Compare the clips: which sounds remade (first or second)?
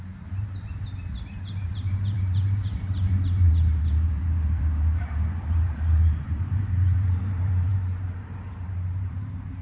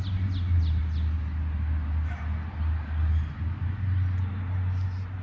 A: first